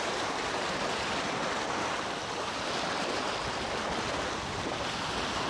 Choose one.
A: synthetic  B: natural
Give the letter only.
B